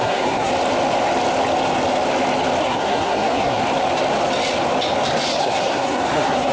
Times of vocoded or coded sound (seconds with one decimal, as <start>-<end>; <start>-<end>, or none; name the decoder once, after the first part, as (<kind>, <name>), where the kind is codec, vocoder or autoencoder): 0.0-0.5 (codec, SNAC); 2.6-3.6; 5.4-6.5